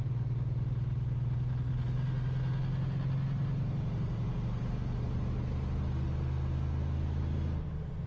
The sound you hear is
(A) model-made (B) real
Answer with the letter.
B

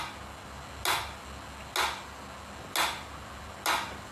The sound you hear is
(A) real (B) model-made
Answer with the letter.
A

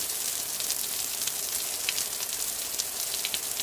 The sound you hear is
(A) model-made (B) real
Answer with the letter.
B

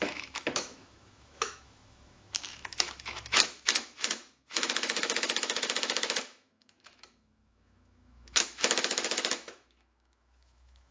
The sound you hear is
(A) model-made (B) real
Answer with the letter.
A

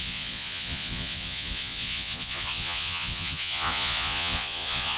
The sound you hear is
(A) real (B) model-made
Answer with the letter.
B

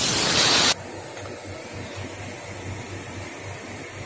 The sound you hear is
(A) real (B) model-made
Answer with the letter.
A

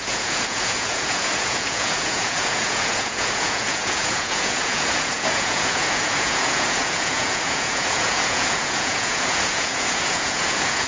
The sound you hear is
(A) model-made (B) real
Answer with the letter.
A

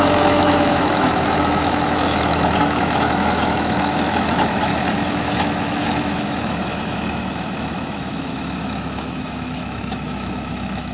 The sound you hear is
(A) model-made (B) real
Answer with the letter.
A